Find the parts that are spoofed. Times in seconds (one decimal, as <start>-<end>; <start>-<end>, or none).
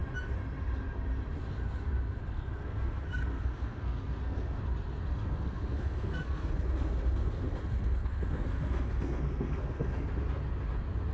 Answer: 2.2-4.6; 5.1-10.1